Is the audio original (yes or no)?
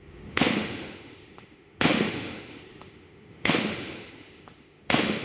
no